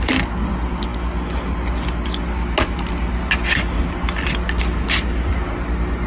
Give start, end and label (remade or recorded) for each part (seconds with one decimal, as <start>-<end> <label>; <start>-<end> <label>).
0.0-6.1 recorded